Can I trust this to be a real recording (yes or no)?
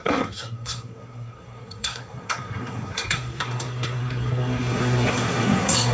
no